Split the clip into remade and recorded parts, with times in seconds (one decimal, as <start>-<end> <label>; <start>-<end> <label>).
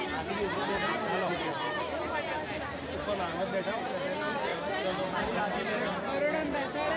0.0-7.0 recorded